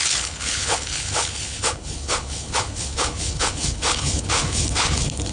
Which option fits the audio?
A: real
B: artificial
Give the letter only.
B